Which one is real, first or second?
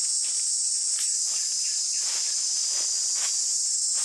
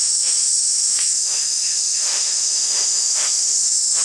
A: first